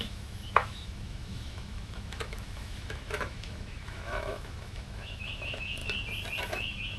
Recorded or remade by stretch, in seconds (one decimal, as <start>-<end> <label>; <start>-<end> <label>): 0.0-5.8 remade; 5.8-6.4 recorded; 6.4-7.0 remade